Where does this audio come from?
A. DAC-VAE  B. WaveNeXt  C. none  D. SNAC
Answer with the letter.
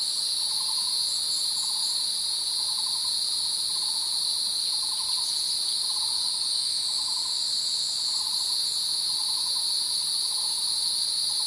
C